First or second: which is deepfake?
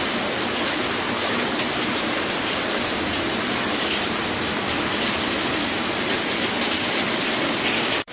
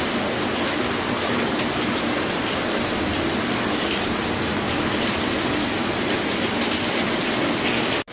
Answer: first